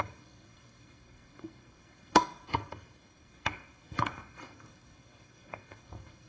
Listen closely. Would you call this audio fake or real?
fake